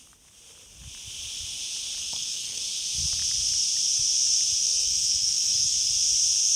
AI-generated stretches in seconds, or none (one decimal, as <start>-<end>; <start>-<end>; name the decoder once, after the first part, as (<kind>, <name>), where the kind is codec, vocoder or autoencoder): 2.0-2.6 (codec, SNAC); 4.6-5.8